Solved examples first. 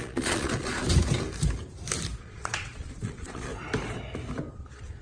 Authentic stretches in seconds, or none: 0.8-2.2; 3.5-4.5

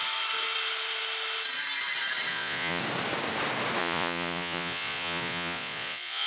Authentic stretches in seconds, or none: 0.0-2.3; 2.8-3.8